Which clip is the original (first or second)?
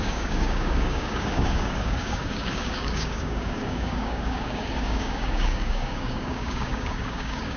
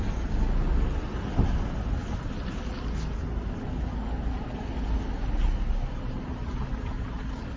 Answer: second